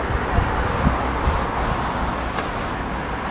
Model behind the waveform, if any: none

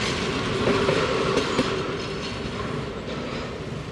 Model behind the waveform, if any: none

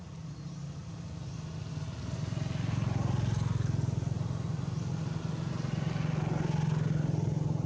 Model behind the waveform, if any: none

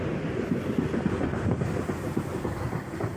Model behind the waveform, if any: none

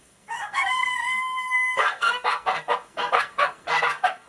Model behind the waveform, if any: codec, SNAC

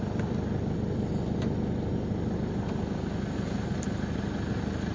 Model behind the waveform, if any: none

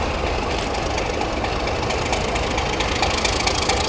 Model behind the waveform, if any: none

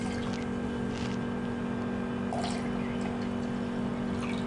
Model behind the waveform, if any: none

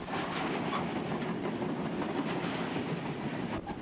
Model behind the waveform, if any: none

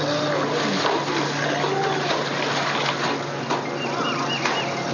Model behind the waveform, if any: none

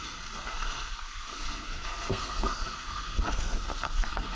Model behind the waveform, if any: codec, SNAC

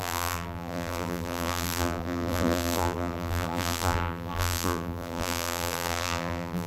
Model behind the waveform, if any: vocoder, BigVGAN v2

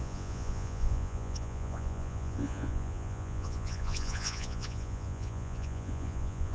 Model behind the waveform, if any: vocoder, Vocos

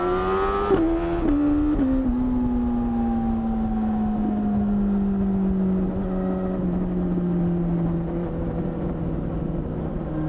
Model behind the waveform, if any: none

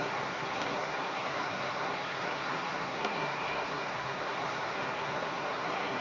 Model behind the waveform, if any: codec, SNAC